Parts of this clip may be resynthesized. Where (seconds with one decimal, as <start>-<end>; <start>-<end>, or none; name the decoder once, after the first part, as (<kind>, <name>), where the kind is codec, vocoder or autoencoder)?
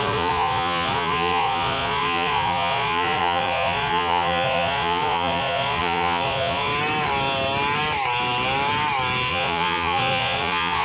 0.0-6.7 (vocoder, Vocos); 9.3-10.8